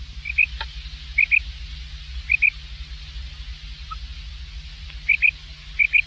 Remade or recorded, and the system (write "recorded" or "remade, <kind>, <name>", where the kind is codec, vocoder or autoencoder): recorded